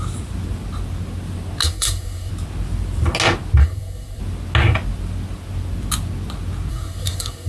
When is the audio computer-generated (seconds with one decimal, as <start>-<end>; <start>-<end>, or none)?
1.6-2.3; 3.6-4.2; 6.7-7.5